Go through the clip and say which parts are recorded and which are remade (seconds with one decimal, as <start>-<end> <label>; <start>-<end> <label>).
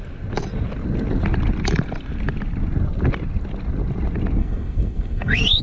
0.0-4.4 recorded; 4.4-5.6 remade